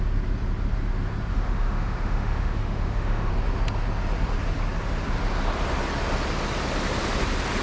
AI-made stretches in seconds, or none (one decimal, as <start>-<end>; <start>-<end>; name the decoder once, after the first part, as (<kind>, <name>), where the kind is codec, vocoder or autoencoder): 1.3-3.3 (autoencoder, DAC-VAE)